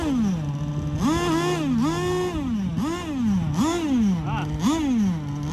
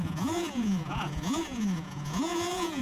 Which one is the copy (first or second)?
second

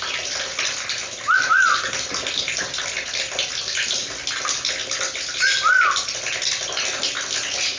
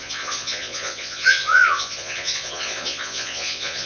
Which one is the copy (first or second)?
second